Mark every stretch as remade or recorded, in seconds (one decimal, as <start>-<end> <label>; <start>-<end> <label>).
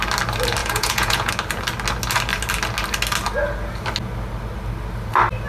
0.0-0.6 recorded; 0.6-1.3 remade; 1.3-5.5 recorded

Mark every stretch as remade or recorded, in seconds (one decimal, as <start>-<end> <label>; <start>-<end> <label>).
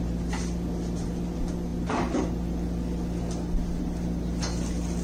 0.0-5.0 recorded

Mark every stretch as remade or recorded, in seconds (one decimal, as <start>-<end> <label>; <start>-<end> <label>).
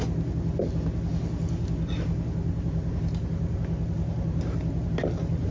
0.0-5.5 recorded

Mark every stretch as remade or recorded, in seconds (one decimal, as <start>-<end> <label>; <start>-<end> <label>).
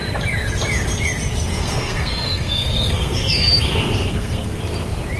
0.0-1.5 recorded; 1.5-4.6 remade; 4.6-5.2 recorded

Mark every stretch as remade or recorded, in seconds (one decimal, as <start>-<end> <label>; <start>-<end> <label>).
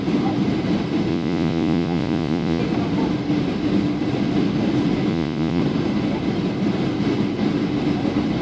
0.0-1.1 recorded; 1.1-2.6 remade; 2.6-5.1 recorded; 5.1-5.6 remade; 5.6-8.4 recorded